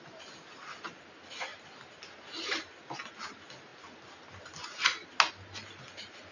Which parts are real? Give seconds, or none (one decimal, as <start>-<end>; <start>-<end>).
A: 0.0-6.3